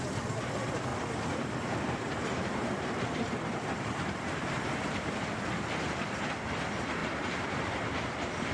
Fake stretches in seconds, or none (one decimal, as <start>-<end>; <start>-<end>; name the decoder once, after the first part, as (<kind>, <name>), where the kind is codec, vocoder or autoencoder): 0.9-5.4 (vocoder, BigVGAN v2); 7.0-7.7